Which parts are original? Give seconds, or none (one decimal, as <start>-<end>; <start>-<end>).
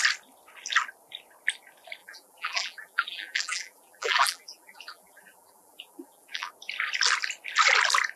0.0-2.0; 6.5-8.2